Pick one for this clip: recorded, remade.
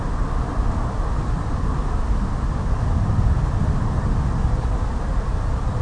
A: recorded